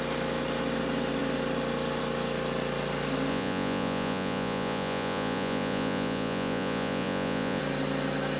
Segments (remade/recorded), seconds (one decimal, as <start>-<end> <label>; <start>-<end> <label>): 0.0-3.3 recorded; 3.3-7.6 remade; 7.6-8.4 recorded